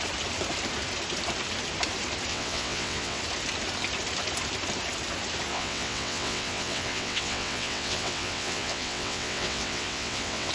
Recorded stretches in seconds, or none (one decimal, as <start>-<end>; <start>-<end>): 0.0-2.3; 3.2-5.5